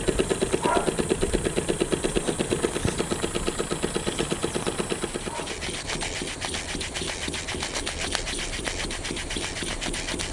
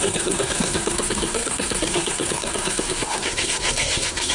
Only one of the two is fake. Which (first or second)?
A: second